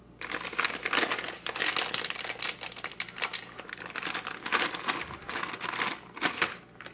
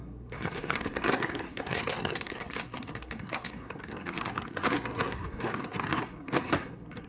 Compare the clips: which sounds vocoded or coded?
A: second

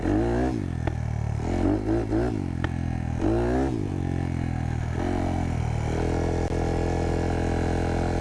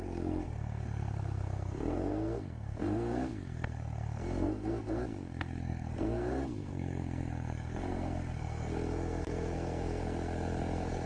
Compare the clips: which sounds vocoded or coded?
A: second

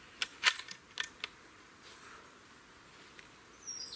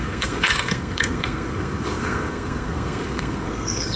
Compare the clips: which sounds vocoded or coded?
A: second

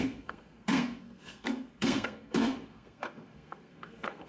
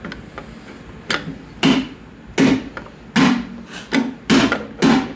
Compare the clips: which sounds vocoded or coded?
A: first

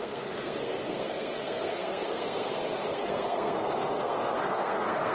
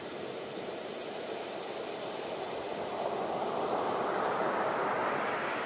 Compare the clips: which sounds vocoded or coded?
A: first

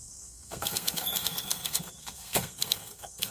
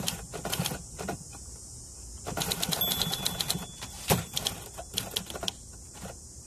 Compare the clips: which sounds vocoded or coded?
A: first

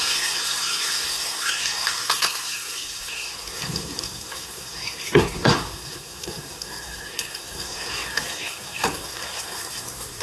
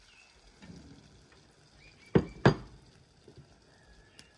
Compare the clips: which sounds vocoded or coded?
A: first